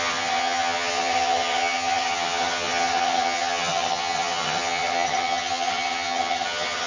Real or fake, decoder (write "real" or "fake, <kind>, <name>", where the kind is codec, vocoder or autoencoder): fake, vocoder, HiFi-GAN